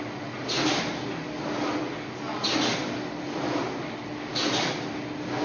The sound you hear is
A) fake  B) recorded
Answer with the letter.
B